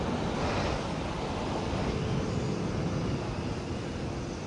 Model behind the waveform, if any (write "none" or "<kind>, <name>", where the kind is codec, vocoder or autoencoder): none